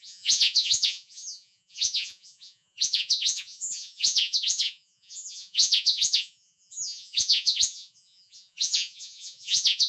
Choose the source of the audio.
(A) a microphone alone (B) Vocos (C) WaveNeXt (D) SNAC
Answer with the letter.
B